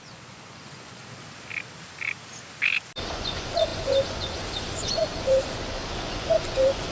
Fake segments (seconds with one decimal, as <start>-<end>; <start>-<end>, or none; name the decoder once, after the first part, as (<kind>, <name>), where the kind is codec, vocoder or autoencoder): 0.0-1.0 (vocoder, Vocos); 3.1-6.9